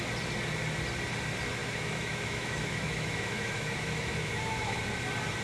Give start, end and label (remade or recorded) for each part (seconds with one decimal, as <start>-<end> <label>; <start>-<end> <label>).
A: 0.0-1.6 recorded; 1.6-4.8 remade; 4.8-5.4 recorded